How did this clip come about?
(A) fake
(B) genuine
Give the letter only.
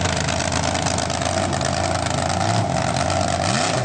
B